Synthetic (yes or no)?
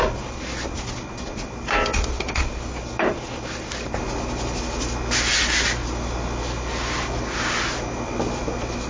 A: no